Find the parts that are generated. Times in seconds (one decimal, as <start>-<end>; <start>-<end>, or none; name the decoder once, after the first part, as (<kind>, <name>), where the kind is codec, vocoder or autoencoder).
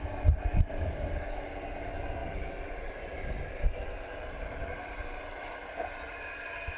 0.5-1.4 (codec, DAC)